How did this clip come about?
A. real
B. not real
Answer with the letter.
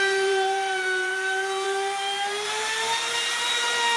B